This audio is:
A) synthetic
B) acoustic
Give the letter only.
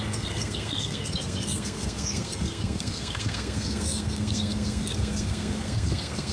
A